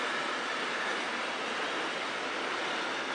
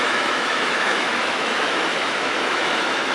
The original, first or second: first